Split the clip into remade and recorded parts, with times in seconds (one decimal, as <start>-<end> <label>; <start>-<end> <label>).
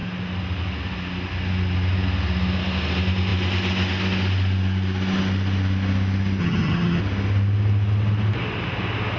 0.0-6.4 recorded; 6.4-7.0 remade; 7.0-9.2 recorded